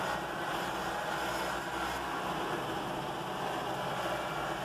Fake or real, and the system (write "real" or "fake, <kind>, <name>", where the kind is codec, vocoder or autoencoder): real